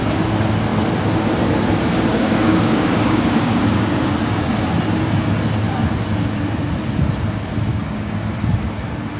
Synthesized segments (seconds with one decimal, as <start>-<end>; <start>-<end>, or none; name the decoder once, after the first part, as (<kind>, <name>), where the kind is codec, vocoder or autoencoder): 2.1-4.0 (codec, DAC); 7.7-8.3